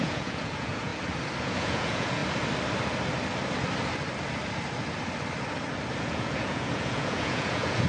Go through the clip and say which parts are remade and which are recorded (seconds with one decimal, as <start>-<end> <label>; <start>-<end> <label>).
0.0-0.9 remade; 0.9-1.4 recorded; 1.4-2.2 remade; 2.2-6.0 recorded; 6.0-7.9 remade